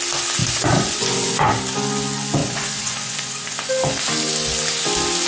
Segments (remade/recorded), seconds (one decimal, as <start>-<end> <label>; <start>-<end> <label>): 0.0-0.4 recorded; 0.4-1.5 remade; 1.5-2.4 recorded; 2.4-3.7 remade; 3.7-5.3 recorded